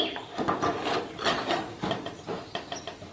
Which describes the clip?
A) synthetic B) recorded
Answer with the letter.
A